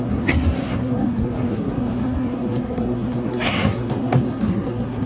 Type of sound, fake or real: fake